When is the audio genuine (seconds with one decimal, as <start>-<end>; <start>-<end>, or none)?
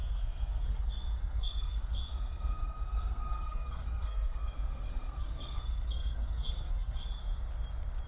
7.2-8.1